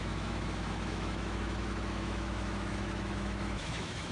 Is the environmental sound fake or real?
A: fake